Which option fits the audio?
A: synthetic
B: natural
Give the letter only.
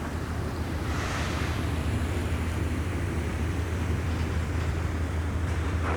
A